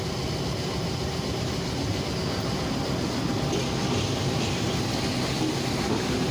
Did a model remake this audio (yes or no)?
no